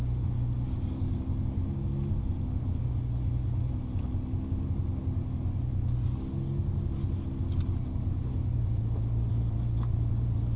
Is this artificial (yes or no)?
no